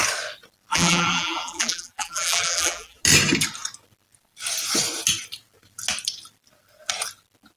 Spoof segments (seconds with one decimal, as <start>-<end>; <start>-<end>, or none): 0.7-3.0